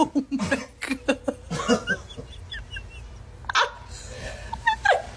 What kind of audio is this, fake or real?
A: real